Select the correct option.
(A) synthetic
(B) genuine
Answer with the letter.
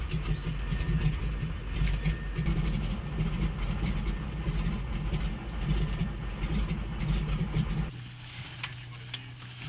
B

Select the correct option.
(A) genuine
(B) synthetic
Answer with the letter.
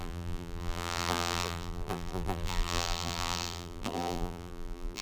B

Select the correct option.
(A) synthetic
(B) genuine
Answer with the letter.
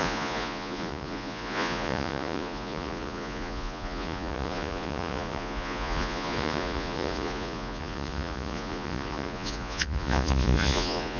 A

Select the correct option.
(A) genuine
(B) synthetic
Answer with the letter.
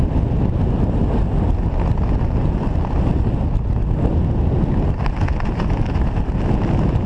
A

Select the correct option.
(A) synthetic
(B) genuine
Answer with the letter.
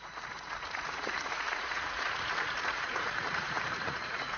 A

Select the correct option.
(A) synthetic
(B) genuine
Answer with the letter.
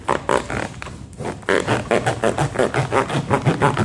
B